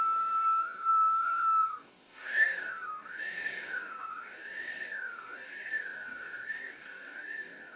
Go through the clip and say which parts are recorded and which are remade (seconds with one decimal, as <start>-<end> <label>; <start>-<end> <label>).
0.0-7.8 remade

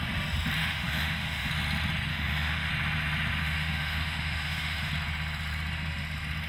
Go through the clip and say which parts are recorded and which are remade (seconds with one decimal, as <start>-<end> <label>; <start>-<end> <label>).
0.0-0.6 recorded; 0.6-1.5 remade; 1.5-2.1 recorded; 2.1-2.7 remade; 2.7-3.4 recorded; 3.4-4.9 remade; 4.9-6.5 recorded

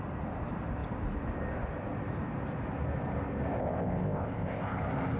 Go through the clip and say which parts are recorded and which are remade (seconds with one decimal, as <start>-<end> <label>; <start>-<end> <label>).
0.0-3.6 recorded; 3.6-4.8 remade; 4.8-5.2 recorded

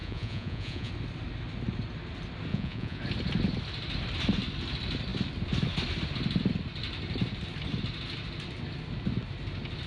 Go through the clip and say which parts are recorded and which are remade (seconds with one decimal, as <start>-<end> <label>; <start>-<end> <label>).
0.0-0.9 remade; 0.9-2.5 recorded; 2.5-3.0 remade; 3.0-9.9 recorded

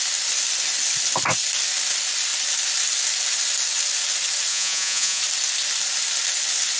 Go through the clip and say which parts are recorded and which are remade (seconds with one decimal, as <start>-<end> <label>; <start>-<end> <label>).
0.0-4.5 recorded; 4.5-5.2 remade; 5.2-6.8 recorded

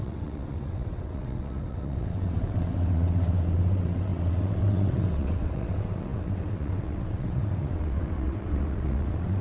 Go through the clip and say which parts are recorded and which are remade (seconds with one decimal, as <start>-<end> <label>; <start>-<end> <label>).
0.0-9.4 remade

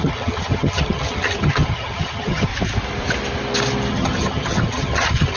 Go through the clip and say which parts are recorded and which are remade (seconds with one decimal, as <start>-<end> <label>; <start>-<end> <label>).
0.0-2.5 remade; 2.5-3.9 recorded; 3.9-5.4 remade

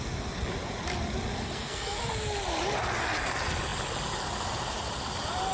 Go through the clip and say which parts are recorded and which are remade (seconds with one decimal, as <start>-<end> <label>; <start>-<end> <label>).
0.0-1.4 recorded; 1.4-2.0 remade; 2.0-5.5 recorded